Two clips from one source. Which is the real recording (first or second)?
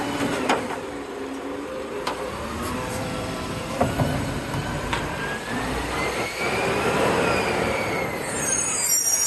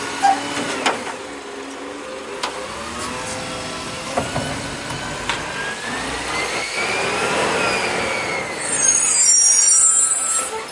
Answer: second